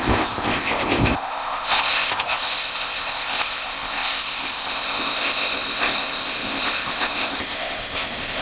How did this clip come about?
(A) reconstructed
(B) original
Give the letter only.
A